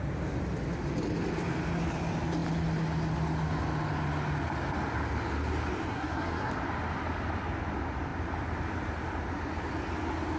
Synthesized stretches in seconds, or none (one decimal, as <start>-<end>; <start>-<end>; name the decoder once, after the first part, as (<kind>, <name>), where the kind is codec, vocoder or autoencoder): 5.9-6.5 (codec, SNAC)